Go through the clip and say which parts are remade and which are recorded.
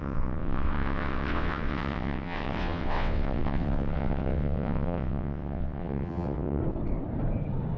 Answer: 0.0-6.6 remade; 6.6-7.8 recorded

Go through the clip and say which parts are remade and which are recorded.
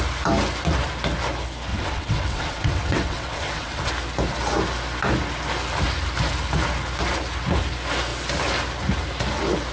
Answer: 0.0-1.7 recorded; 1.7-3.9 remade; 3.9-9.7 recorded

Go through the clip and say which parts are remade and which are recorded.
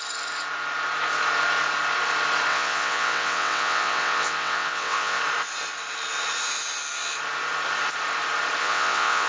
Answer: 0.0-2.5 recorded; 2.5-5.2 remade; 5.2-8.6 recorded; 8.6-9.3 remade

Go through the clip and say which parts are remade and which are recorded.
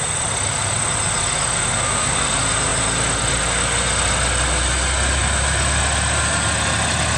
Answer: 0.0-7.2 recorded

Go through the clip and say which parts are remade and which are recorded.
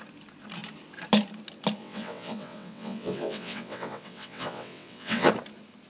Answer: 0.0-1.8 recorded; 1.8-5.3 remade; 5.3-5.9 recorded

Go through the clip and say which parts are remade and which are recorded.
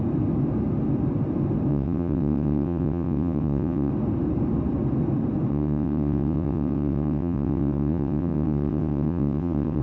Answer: 0.0-1.7 recorded; 1.7-3.9 remade; 3.9-5.5 recorded; 5.5-9.8 remade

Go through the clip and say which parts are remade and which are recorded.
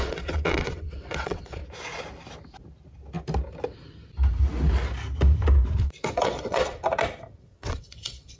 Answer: 0.0-1.6 remade; 1.6-5.8 recorded; 5.8-6.8 remade; 6.8-7.4 recorded; 7.4-8.4 remade